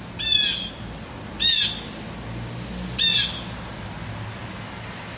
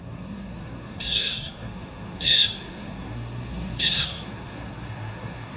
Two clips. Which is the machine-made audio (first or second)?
second